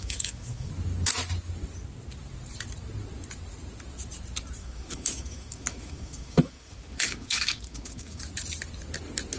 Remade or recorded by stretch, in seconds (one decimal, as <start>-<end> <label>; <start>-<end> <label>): 0.0-0.7 remade; 0.7-4.6 recorded; 4.6-8.2 remade; 8.2-9.4 recorded